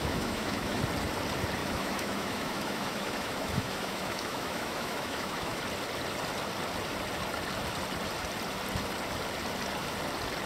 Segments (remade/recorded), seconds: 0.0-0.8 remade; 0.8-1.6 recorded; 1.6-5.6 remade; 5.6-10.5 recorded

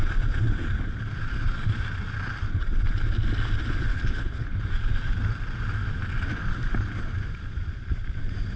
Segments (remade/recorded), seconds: 0.0-3.9 recorded; 3.9-4.6 remade; 4.6-8.6 recorded

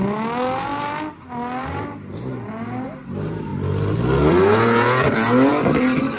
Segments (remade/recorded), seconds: 0.0-6.2 recorded

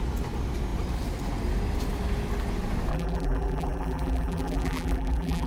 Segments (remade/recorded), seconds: 0.0-2.9 recorded; 2.9-5.5 remade

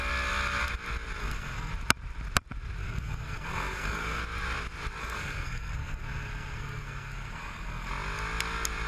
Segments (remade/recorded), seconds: 0.0-1.2 recorded; 1.2-1.7 remade; 1.7-2.8 recorded; 2.8-4.2 remade; 4.2-5.0 recorded; 5.0-7.9 remade; 7.9-8.9 recorded

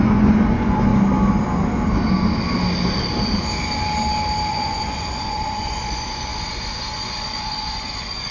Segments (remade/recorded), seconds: 0.0-0.9 remade; 0.9-4.5 recorded; 4.5-8.3 remade